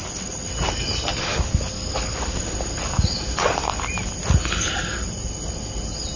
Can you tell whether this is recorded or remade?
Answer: recorded